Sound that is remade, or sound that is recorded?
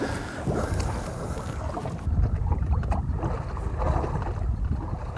recorded